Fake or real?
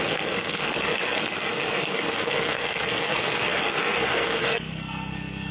fake